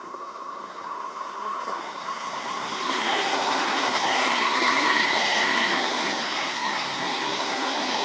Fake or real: fake